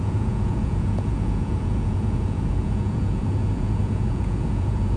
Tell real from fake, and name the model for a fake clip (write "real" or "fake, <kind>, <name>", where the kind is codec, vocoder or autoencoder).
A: fake, vocoder, Vocos